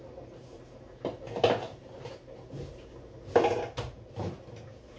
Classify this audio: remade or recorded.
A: recorded